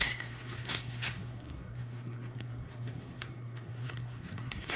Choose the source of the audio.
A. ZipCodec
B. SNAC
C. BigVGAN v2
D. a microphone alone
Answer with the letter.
B